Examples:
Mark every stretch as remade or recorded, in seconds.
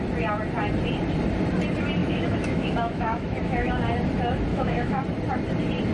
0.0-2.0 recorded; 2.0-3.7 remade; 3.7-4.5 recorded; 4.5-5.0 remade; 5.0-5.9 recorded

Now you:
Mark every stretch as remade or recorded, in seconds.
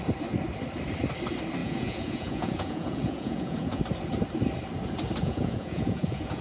0.0-1.6 recorded; 1.6-3.8 remade; 3.8-5.2 recorded; 5.2-6.4 remade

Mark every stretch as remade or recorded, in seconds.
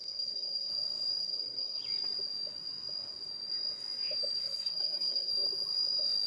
0.0-0.7 remade; 0.7-1.2 recorded; 1.2-1.8 remade; 1.8-4.4 recorded; 4.4-5.3 remade; 5.3-6.3 recorded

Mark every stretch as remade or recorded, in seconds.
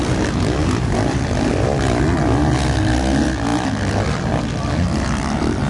0.0-5.7 recorded